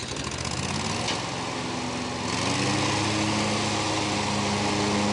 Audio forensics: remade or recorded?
recorded